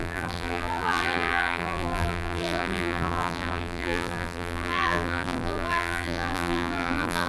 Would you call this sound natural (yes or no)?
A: no